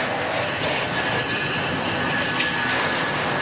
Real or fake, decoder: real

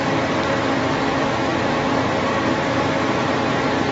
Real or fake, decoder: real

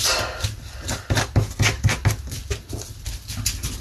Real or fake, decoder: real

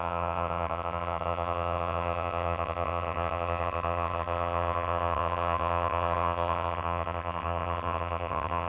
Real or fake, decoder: fake, vocoder, HiFi-GAN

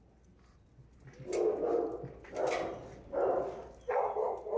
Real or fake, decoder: real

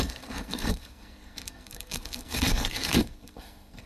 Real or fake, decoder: fake, codec, SNAC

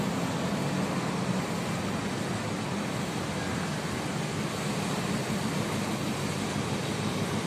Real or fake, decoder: real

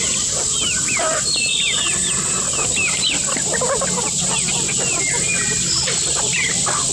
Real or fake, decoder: real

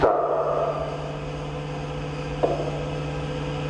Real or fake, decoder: real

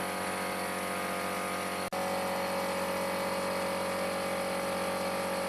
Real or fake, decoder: real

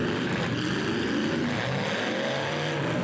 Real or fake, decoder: real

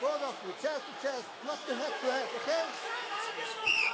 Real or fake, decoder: fake, autoencoder, DAC-VAE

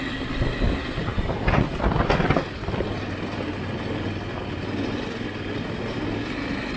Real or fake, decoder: real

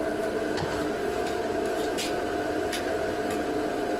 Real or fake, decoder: real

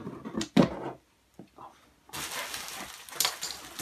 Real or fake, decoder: real